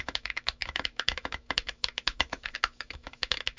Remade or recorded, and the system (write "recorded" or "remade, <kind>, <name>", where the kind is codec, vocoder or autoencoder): remade, autoencoder, DAC-VAE